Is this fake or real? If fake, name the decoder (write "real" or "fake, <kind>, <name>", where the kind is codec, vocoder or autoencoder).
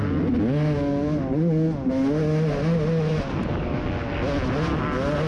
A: real